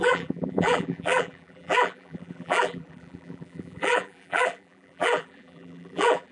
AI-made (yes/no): yes